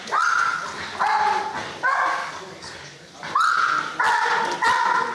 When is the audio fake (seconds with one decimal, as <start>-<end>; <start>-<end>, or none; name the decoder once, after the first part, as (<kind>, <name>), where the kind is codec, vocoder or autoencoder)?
2.2-3.1 (codec, DAC)